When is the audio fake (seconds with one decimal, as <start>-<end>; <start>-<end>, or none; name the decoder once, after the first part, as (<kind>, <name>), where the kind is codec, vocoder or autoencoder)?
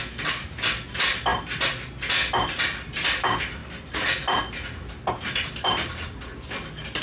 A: none